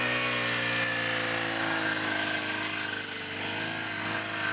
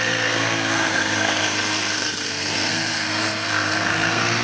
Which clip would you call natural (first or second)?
first